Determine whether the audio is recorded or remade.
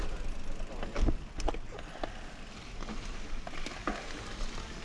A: recorded